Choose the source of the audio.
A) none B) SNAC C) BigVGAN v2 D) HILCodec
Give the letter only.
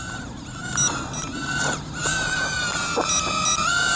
A